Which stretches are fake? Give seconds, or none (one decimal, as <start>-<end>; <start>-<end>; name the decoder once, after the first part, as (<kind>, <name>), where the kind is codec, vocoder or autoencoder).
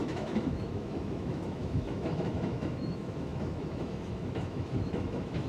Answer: 0.0-5.5 (autoencoder, DAC-VAE)